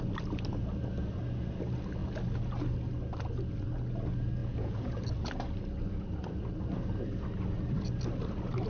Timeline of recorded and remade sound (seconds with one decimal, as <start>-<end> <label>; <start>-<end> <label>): 0.0-4.4 recorded; 4.4-5.0 remade; 5.0-8.7 recorded